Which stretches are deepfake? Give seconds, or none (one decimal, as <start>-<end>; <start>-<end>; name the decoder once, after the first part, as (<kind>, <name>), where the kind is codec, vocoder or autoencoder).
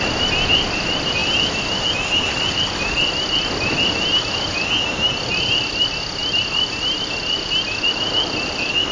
none